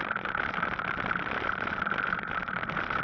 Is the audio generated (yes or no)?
no